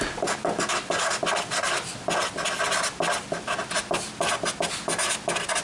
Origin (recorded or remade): recorded